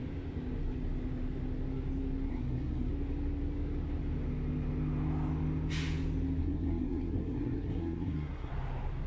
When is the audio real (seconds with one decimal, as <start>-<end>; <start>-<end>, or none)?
0.0-2.3; 2.9-6.4; 8.5-9.1